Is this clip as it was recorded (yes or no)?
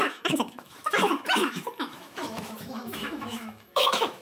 no